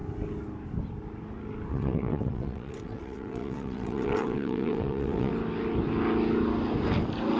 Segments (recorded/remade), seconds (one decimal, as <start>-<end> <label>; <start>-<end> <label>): 0.0-1.7 recorded; 1.7-5.3 remade; 5.3-7.4 recorded